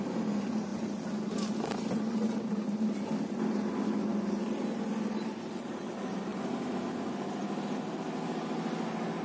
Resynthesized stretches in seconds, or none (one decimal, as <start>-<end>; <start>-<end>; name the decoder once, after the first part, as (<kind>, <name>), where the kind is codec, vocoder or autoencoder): none